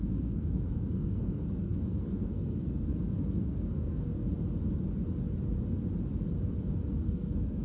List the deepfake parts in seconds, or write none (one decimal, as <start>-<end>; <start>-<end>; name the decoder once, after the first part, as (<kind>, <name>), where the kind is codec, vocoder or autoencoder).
0.0-4.1 (codec, SNAC); 6.9-7.6